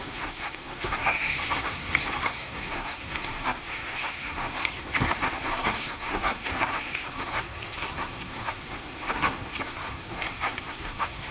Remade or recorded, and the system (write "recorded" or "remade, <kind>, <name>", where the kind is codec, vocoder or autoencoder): remade, codec, SNAC